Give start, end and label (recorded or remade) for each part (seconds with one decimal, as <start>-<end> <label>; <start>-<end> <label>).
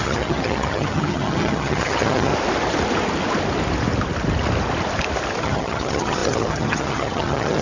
0.0-2.3 remade; 2.3-5.4 recorded; 5.4-7.6 remade